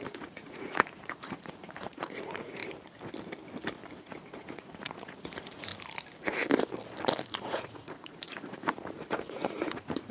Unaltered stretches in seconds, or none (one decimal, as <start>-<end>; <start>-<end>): 2.6-4.0; 5.7-7.4